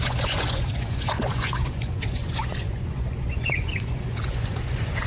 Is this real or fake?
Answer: fake